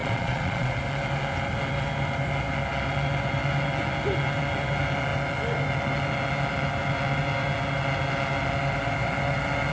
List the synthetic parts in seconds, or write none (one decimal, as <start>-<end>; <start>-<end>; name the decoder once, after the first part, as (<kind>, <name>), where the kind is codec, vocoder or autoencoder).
0.0-0.8 (vocoder, Vocos)

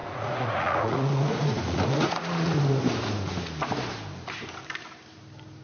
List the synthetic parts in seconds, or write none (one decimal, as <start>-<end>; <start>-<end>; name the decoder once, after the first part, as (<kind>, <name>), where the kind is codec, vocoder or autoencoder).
0.0-2.6 (vocoder, Vocos)

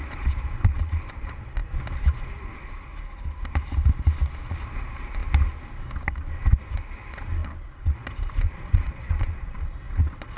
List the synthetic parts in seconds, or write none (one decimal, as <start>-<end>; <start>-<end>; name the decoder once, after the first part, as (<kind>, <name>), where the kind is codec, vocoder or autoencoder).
0.0-1.6 (vocoder, Vocos); 2.4-2.9; 4.5-5.2; 6.7-10.4

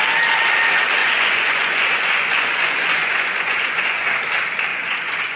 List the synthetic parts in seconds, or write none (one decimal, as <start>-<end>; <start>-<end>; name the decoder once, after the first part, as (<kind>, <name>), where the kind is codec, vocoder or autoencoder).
1.0-4.2 (vocoder, Vocos); 4.7-5.4

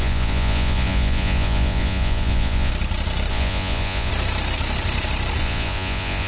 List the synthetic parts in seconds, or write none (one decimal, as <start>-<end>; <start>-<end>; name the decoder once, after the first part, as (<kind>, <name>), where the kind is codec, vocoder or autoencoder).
0.0-2.7 (vocoder, Vocos); 3.3-4.1; 5.4-6.3

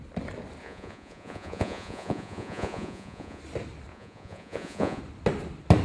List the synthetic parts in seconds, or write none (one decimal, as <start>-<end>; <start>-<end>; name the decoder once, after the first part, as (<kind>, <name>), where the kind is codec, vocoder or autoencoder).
0.6-3.4 (vocoder, Vocos); 3.9-5.0

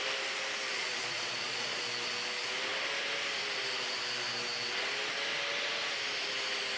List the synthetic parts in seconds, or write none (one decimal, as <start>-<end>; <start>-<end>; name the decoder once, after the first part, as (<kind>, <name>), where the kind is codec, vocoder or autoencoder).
0.7-1.8 (vocoder, Vocos)

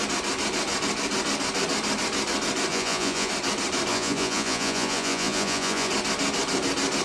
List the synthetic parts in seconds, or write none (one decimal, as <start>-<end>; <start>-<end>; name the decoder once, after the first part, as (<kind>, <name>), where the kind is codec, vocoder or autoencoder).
2.7-3.3 (vocoder, Vocos); 3.9-5.9